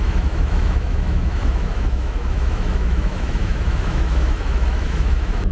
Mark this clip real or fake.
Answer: fake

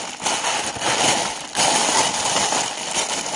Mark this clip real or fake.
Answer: real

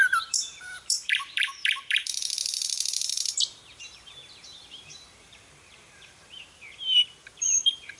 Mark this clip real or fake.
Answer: fake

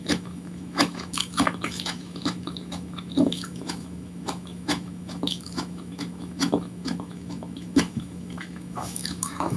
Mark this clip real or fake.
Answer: fake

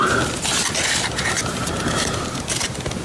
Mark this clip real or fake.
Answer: real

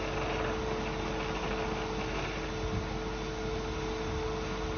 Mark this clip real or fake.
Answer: real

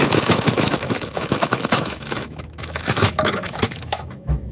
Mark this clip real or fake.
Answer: fake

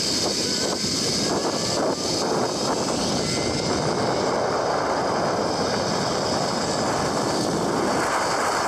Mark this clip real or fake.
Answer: real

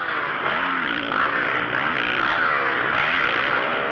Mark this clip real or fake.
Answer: real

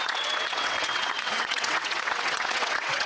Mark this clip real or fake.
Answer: fake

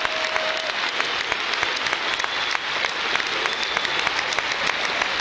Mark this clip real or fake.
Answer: real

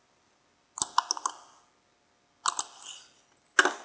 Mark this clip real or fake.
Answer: real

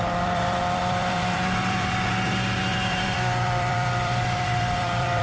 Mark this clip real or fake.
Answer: fake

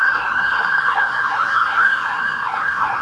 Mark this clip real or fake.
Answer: fake